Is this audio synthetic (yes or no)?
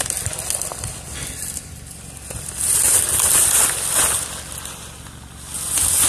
no